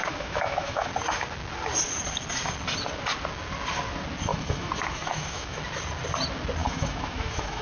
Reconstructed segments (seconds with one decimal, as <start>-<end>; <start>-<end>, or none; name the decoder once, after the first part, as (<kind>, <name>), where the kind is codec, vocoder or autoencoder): 0.0-0.9 (autoencoder, DAC-VAE); 4.3-5.6; 6.6-7.6